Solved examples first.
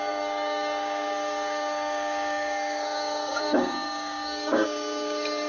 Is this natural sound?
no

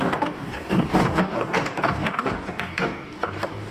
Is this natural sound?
no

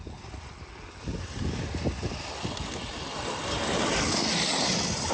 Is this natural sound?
yes